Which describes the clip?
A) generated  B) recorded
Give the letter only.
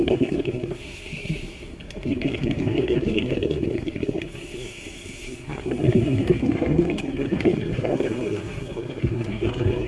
A